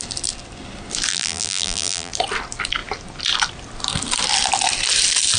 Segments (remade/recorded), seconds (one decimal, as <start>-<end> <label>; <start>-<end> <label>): 0.0-1.1 recorded; 1.1-2.1 remade; 2.1-5.4 recorded